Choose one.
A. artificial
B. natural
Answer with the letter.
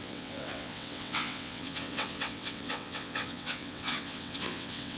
A